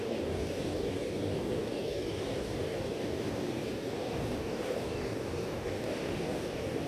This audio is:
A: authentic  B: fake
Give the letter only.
B